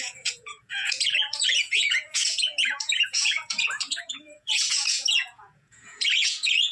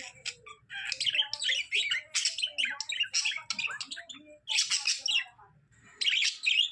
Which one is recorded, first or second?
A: second